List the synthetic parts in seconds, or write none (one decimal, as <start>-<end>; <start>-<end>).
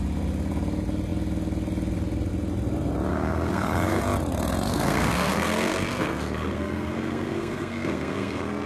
3.1-4.0; 4.7-8.7